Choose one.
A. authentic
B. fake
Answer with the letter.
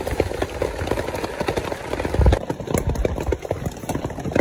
A